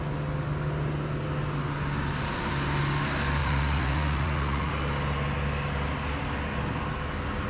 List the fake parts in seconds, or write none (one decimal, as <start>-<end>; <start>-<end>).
3.4-4.7